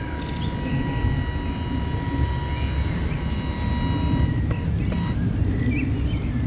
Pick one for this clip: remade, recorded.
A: recorded